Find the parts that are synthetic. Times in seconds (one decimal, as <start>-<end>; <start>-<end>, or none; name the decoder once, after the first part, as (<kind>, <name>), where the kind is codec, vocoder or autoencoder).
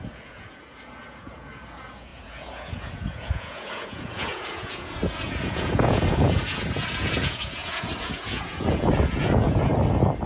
0.0-9.7 (vocoder, Vocos)